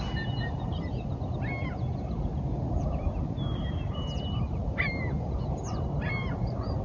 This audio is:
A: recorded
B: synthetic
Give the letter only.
A